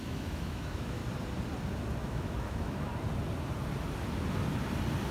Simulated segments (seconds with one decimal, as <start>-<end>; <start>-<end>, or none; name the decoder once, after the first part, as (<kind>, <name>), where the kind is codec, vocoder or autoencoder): 0.0-1.0 (autoencoder, DAC-VAE); 2.0-2.9

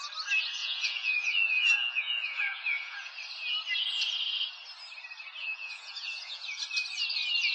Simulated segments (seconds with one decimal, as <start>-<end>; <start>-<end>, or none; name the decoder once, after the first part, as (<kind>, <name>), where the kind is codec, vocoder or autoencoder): 0.6-3.1 (vocoder, Vocos); 5.4-6.6